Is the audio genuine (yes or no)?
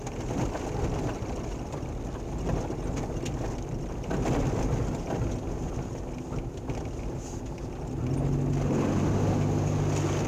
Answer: yes